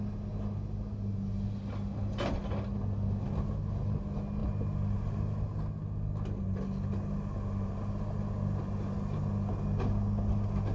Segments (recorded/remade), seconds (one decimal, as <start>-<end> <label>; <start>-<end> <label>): 0.0-10.7 recorded